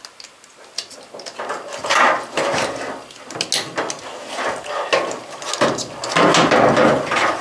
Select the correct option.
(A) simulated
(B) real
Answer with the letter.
B